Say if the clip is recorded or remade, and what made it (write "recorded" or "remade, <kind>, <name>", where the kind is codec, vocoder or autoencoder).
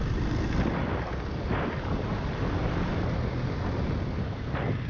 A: recorded